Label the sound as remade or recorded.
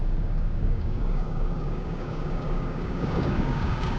remade